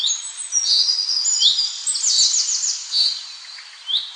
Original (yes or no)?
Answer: yes